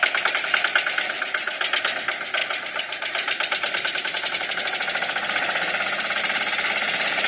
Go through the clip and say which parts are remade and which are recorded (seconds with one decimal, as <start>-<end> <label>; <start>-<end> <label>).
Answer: 0.0-7.3 recorded